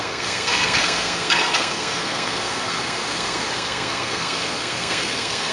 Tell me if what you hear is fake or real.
fake